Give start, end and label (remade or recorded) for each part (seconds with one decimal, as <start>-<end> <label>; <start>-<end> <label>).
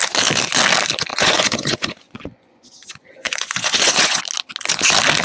0.0-1.1 recorded; 1.1-4.2 remade; 4.2-5.2 recorded